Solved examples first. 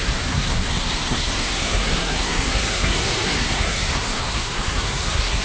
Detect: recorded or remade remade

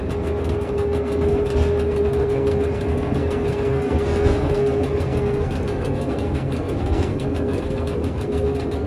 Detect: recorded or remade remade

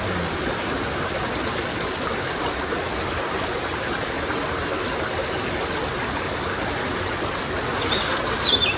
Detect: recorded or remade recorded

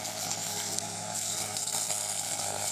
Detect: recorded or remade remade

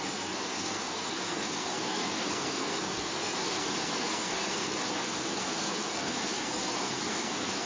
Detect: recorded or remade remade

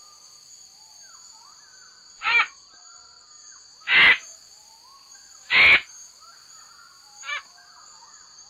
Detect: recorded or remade recorded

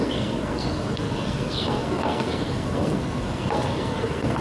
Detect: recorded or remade remade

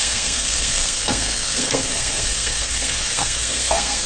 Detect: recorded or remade remade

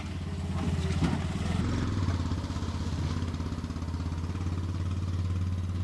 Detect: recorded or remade recorded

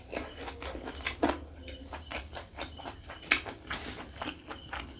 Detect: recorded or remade recorded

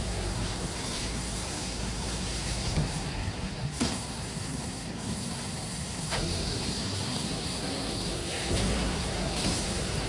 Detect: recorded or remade remade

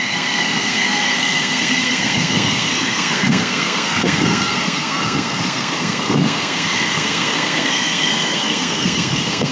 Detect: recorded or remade remade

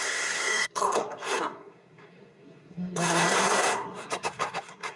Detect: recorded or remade remade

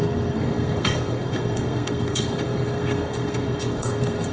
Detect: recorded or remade remade